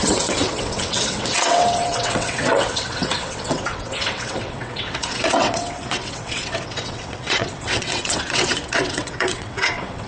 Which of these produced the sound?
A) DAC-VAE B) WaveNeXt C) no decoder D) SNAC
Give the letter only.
B